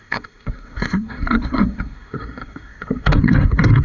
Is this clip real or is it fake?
fake